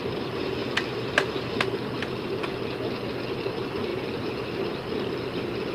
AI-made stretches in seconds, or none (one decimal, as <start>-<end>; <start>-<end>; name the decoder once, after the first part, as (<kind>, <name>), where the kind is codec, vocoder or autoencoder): 3.9-4.5 (vocoder, BigVGAN v2)